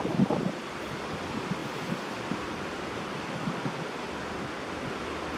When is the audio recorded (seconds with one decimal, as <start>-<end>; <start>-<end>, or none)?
0.0-5.4